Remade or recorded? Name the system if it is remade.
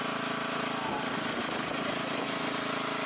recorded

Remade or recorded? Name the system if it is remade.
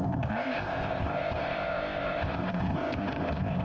remade, codec, ZipCodec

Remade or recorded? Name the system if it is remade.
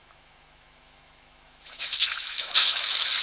remade, autoencoder, DAC-VAE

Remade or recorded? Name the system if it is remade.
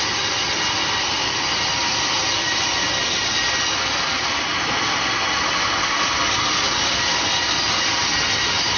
recorded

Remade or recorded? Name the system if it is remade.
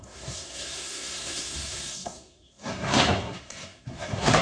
remade, codec, SNAC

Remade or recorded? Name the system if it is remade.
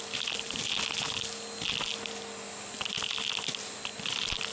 recorded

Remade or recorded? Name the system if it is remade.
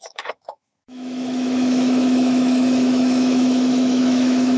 remade, autoencoder, DAC-VAE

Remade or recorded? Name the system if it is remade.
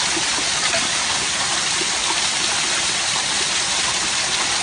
recorded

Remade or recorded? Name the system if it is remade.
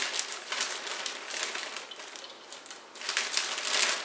recorded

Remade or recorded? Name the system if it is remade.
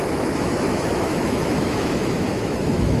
remade, autoencoder, DAC-VAE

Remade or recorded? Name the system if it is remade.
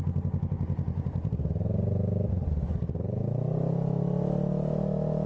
recorded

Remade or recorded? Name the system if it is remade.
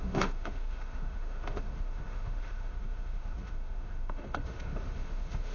remade, autoencoder, DAC-VAE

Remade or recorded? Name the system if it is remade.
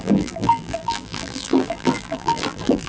remade, vocoder, BigVGAN v2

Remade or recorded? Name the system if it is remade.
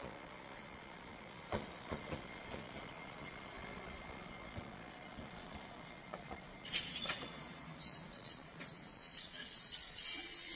remade, vocoder, Vocos